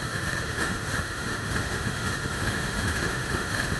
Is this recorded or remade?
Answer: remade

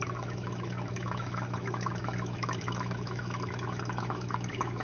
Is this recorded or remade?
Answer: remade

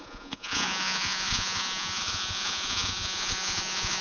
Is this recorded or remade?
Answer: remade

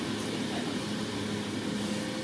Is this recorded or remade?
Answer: recorded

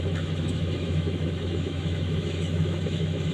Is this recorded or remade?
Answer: remade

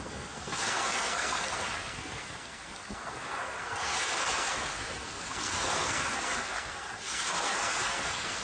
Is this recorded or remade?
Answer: remade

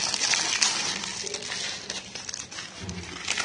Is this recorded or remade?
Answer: recorded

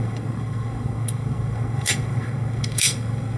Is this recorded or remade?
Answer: remade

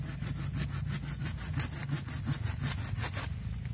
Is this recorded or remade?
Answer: recorded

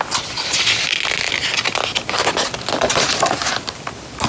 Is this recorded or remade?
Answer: recorded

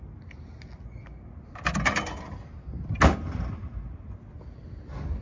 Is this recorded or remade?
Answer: recorded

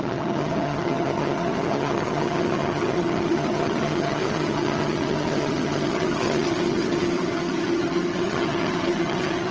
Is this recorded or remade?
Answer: remade